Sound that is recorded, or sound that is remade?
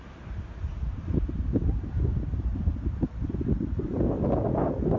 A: remade